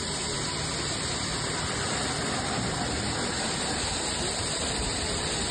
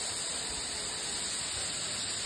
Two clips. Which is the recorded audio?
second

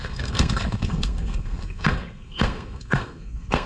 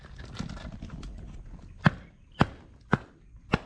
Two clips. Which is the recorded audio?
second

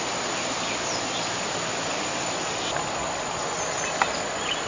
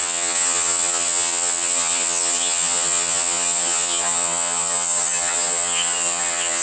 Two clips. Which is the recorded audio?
first